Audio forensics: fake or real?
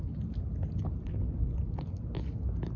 real